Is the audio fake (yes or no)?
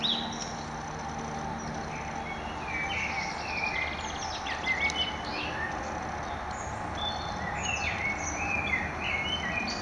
no